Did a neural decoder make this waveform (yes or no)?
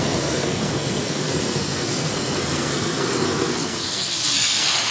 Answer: yes